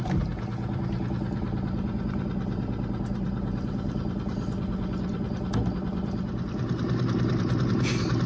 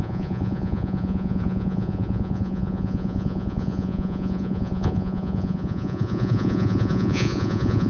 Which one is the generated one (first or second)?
second